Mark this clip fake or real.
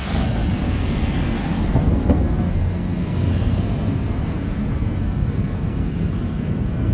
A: fake